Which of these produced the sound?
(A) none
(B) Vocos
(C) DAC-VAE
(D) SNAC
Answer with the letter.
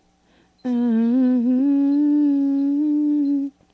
A